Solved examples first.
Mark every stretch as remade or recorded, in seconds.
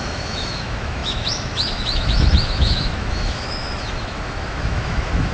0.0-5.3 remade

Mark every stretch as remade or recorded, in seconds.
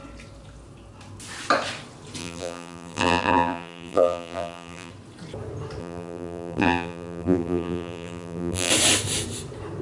0.0-2.2 recorded; 2.2-4.9 remade; 4.9-5.8 recorded; 5.8-8.7 remade; 8.7-9.8 recorded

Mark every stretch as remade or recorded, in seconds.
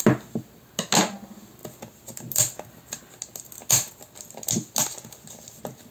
0.0-5.9 recorded